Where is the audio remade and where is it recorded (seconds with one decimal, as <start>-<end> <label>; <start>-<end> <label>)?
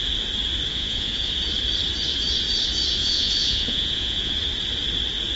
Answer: 0.0-0.7 recorded; 0.7-1.3 remade; 1.3-3.0 recorded; 3.0-4.3 remade; 4.3-5.4 recorded